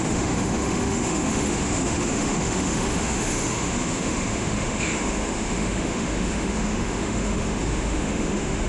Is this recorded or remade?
remade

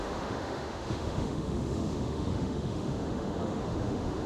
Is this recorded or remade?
remade